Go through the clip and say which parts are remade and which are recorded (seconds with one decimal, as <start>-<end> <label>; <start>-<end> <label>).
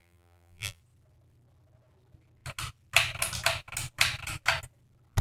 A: 0.0-0.8 remade; 0.8-5.2 recorded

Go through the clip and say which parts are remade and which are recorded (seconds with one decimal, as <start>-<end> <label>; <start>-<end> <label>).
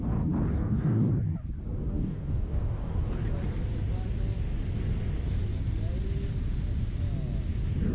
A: 0.0-0.5 recorded; 0.5-1.1 remade; 1.1-1.9 recorded; 1.9-3.1 remade; 3.1-7.9 recorded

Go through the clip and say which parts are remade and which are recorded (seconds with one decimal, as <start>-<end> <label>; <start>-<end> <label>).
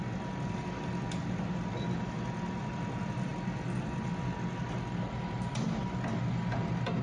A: 0.0-7.0 recorded